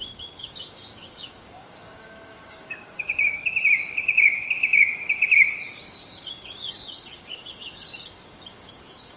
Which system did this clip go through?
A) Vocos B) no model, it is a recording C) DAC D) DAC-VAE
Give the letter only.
C